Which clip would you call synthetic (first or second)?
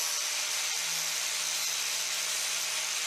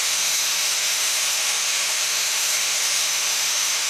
second